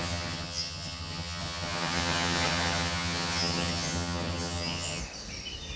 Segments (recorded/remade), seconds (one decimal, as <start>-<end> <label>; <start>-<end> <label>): 0.0-5.0 remade; 5.0-5.8 recorded